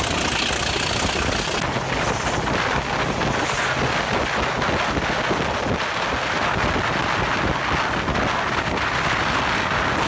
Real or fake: real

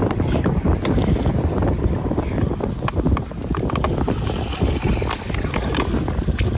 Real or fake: real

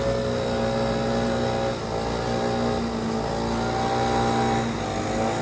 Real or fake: real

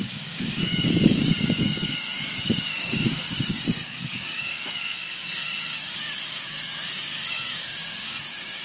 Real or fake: fake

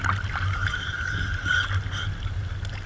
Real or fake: real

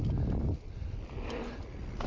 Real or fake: real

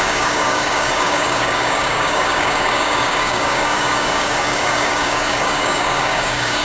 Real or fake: fake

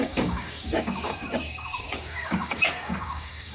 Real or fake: fake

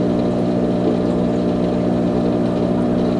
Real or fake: real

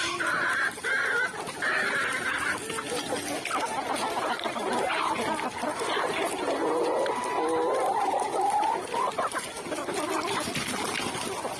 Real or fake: real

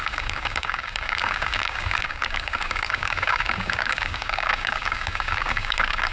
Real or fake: fake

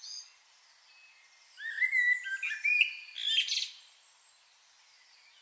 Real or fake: real